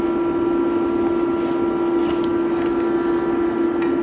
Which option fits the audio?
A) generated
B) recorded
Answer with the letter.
B